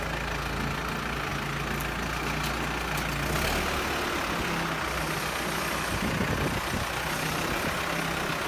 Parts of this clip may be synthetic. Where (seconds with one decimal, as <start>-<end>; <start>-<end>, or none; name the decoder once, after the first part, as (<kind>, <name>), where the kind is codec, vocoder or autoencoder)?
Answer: none

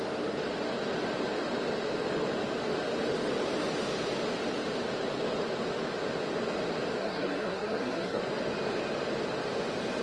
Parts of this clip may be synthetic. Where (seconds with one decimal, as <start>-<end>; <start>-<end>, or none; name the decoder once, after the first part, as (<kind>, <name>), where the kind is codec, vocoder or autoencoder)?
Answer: 7.0-8.2 (codec, SNAC)